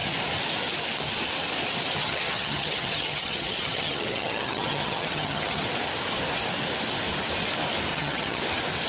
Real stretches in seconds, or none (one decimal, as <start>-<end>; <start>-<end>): 0.0-2.0; 5.6-7.9; 8.4-8.9